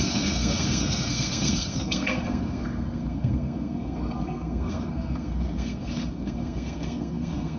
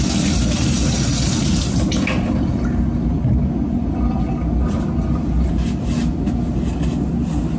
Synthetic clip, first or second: first